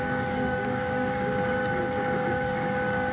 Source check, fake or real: fake